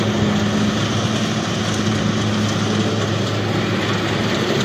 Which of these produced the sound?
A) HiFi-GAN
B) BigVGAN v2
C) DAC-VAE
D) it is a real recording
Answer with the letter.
B